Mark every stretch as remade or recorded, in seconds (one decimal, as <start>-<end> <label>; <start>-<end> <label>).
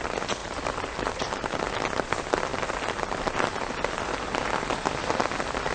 0.0-0.4 recorded; 0.4-1.8 remade; 1.8-5.7 recorded